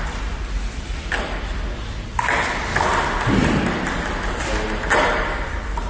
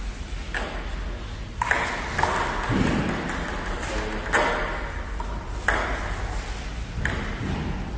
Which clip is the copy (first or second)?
first